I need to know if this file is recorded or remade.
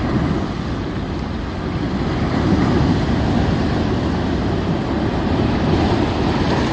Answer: recorded